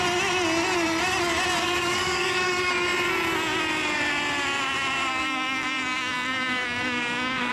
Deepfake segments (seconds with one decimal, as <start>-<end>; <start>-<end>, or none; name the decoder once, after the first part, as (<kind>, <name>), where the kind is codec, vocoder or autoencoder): 1.6-2.7 (codec, DAC); 5.1-7.5